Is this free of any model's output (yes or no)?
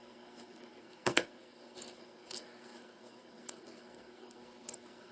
no